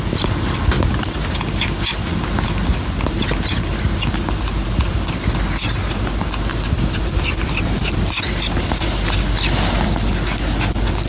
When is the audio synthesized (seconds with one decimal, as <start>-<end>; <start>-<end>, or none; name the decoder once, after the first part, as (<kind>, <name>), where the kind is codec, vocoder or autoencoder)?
6.5-7.6 (vocoder, BigVGAN v2)